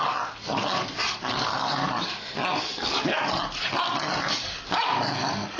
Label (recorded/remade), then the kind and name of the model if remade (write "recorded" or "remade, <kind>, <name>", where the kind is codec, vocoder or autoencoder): recorded